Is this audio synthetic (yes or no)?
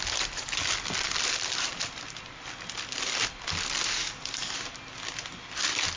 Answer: no